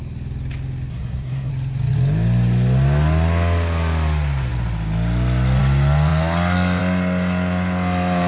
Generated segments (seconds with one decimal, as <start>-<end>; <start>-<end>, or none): 0.9-1.5